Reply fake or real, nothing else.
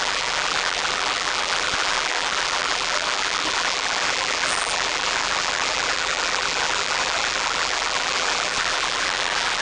fake